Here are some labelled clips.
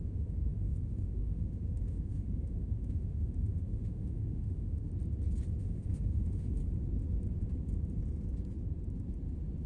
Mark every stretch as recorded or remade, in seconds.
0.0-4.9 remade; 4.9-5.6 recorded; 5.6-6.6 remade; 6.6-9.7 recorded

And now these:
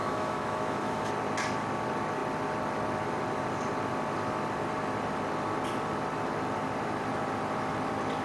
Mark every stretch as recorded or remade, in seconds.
0.0-1.1 remade; 1.1-8.2 recorded

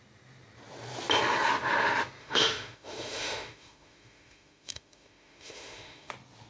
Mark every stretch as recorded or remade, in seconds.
0.0-2.2 recorded; 2.2-6.1 remade; 6.1-6.5 recorded

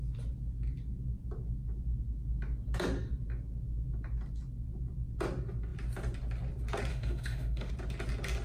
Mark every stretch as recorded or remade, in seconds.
0.0-6.9 recorded; 6.9-7.7 remade; 7.7-8.4 recorded

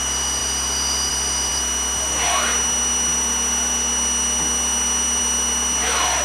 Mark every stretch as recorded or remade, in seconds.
0.0-6.2 recorded

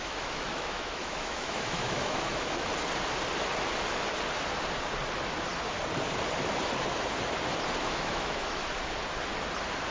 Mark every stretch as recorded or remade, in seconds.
0.0-2.7 remade; 2.7-7.8 recorded; 7.8-8.6 remade; 8.6-9.9 recorded